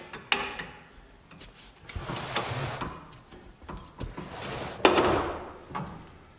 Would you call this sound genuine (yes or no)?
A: yes